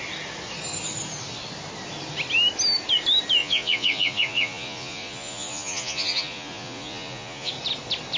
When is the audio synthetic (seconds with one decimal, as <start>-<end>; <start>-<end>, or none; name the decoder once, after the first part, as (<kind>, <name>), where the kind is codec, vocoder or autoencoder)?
3.4-7.5 (vocoder, Vocos)